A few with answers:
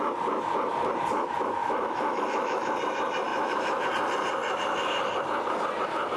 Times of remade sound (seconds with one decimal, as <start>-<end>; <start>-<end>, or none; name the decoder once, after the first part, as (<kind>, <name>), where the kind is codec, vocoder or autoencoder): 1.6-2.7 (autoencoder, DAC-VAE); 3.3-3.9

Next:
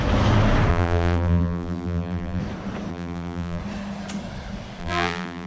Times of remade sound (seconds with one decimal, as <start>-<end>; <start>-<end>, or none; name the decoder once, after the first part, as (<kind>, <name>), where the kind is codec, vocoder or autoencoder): 0.7-2.4 (vocoder, BigVGAN v2); 2.9-3.6; 4.8-5.5

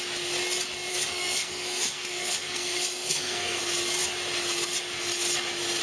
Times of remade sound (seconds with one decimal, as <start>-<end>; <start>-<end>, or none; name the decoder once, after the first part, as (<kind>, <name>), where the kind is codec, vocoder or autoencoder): 0.9-3.6 (codec, SNAC)

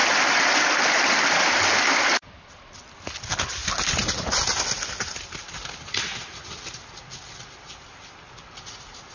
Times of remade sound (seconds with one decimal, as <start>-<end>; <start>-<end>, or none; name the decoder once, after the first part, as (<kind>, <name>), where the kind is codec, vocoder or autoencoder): none

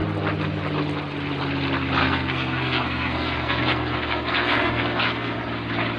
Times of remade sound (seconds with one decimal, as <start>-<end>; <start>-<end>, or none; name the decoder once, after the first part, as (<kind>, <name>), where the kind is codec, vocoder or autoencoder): 2.0-5.4 (codec, SNAC)

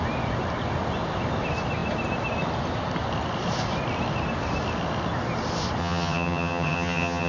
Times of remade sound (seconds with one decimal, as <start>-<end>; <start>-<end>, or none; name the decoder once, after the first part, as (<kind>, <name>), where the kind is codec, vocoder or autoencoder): 5.8-7.3 (vocoder, HiFi-GAN)